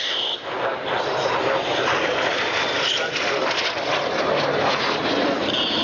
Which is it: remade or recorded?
recorded